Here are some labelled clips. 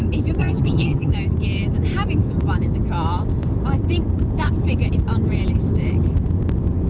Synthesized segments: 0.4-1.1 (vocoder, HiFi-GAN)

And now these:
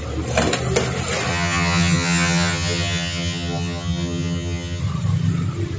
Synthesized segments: 1.3-4.8 (vocoder, HiFi-GAN)

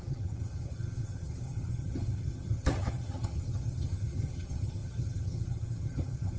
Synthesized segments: 0.0-6.4 (vocoder, HiFi-GAN)

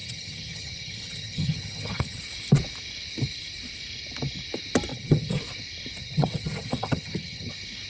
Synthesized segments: 0.0-2.2 (vocoder, HiFi-GAN); 4.9-5.4; 6.0-7.5

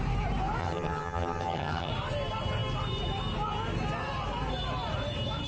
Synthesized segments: 0.6-1.9 (vocoder, HiFi-GAN)

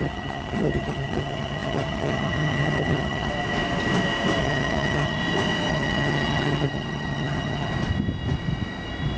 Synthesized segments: 0.0-3.3 (vocoder, HiFi-GAN); 4.4-5.2; 5.7-7.7

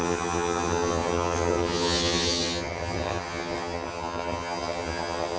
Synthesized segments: 0.0-5.4 (vocoder, HiFi-GAN)